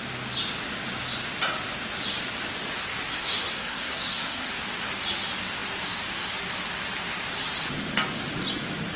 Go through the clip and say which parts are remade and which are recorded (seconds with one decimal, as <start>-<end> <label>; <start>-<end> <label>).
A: 0.0-3.1 recorded; 3.1-4.5 remade; 4.5-9.0 recorded